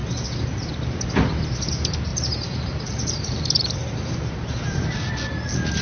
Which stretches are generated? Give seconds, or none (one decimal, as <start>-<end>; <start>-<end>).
2.1-4.9